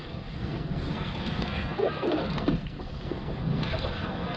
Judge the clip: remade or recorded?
remade